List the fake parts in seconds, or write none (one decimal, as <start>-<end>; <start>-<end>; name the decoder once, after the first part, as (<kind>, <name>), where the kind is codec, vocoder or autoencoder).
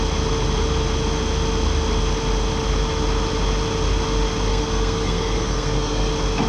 4.5-6.1 (codec, SNAC)